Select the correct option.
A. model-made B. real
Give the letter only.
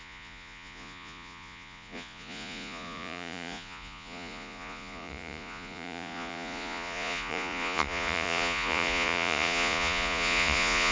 A